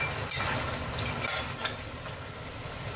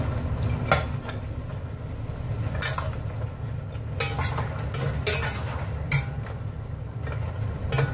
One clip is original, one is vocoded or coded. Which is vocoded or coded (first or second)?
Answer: first